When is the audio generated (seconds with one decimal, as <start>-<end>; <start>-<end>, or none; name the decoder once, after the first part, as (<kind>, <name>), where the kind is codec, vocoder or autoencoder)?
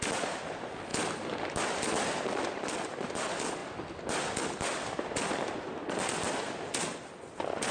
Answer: 0.0-0.9 (vocoder, BigVGAN v2); 2.3-3.6; 4.3-7.7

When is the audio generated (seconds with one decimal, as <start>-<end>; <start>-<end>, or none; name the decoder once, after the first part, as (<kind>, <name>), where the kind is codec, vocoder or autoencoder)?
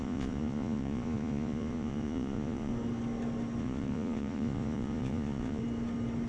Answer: 0.0-2.7 (vocoder, Vocos); 3.6-5.6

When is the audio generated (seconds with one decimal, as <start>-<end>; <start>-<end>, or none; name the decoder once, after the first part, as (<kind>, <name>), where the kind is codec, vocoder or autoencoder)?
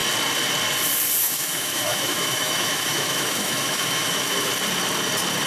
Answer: 1.2-4.5 (autoencoder, DAC-VAE)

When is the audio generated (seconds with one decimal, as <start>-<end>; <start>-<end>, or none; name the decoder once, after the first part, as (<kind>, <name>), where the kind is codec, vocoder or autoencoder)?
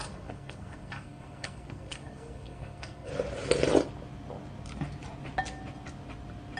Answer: 0.0-3.1 (codec, SNAC)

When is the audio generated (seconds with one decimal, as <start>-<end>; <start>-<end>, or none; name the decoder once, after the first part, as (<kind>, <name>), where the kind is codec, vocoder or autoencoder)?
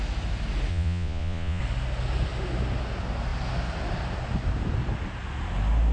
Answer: 0.7-1.6 (vocoder, Vocos)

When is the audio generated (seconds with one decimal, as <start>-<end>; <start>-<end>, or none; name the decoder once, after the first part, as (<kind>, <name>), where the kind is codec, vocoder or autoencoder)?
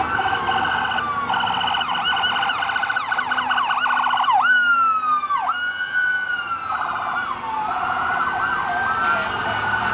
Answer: 7.7-8.2 (vocoder, BigVGAN v2)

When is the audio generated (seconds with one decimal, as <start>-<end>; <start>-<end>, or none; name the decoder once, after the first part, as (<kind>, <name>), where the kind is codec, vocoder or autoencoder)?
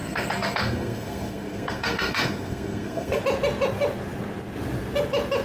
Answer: 0.0-3.2 (codec, SNAC)